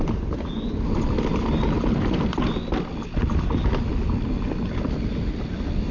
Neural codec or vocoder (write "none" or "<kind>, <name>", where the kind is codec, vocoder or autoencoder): none